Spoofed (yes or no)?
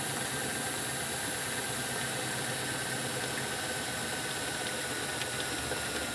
no